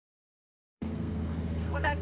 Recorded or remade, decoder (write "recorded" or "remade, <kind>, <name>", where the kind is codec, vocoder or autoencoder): remade, codec, SNAC